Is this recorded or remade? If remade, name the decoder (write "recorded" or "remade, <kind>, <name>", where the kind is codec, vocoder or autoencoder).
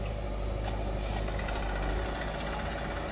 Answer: recorded